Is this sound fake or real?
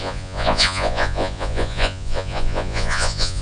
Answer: fake